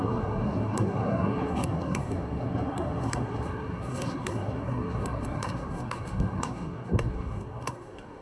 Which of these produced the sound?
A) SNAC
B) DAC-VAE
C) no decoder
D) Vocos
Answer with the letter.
A